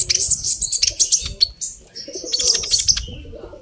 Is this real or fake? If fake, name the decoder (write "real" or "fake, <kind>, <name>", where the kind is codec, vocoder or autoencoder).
real